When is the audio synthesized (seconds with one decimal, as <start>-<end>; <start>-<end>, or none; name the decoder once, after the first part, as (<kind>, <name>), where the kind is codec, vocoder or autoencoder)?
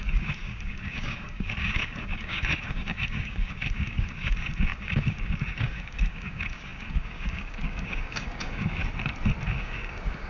0.0-8.8 (codec, DAC); 9.6-10.3